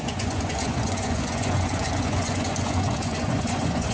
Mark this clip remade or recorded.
remade